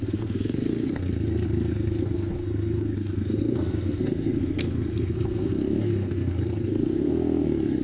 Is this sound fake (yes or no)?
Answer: yes